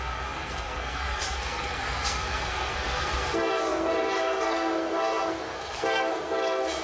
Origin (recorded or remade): remade